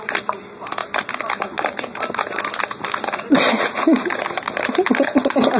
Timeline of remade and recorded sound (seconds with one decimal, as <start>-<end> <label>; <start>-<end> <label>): 0.0-5.6 recorded

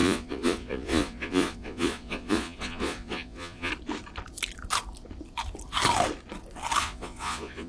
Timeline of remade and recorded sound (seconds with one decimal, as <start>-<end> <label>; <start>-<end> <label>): 0.0-3.7 remade; 3.7-6.8 recorded; 6.8-7.7 remade

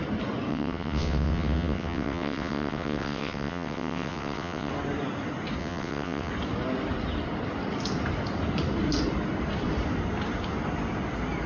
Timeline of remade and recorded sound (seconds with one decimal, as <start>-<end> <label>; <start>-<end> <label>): 0.0-0.5 recorded; 0.5-4.7 remade; 4.7-5.6 recorded; 5.6-6.3 remade; 6.3-11.5 recorded